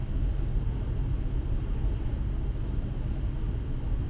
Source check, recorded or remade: recorded